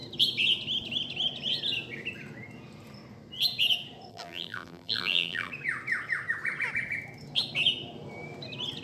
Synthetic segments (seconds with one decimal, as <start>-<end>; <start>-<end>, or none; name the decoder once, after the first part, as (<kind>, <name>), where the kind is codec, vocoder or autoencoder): 4.1-5.5 (vocoder, BigVGAN v2)